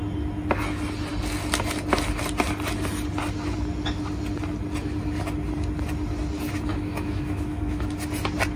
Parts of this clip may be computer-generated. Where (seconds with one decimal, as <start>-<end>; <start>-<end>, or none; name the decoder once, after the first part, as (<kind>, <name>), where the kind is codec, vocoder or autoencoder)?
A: 6.7-7.9 (autoencoder, DAC-VAE)